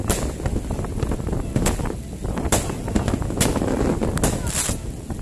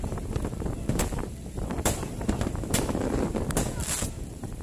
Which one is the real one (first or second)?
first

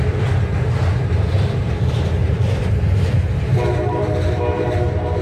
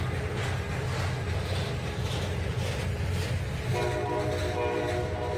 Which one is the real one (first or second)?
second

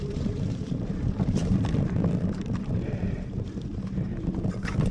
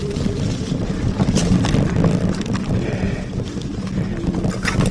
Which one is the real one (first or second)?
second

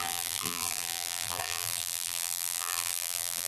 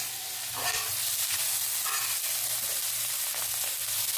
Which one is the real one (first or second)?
second